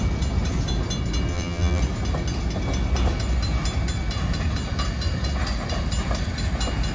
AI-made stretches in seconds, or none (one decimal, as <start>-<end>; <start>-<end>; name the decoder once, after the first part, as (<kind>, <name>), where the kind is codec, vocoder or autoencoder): 1.3-1.8 (vocoder, BigVGAN v2)